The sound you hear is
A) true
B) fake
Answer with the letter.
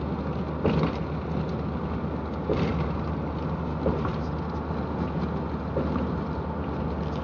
A